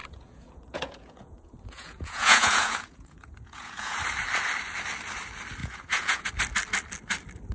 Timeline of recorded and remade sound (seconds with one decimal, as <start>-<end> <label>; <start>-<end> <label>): 0.0-4.0 remade; 4.0-5.6 recorded; 5.6-6.3 remade; 6.3-7.5 recorded